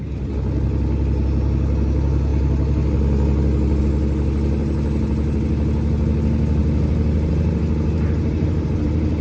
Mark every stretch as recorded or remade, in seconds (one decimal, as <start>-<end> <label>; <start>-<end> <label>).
0.0-6.6 recorded; 6.6-9.2 remade